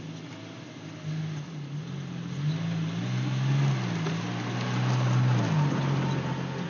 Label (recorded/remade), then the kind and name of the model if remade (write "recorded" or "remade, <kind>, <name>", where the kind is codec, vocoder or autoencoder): recorded